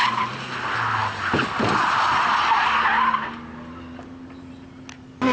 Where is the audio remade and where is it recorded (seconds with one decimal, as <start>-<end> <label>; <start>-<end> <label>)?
0.0-5.3 recorded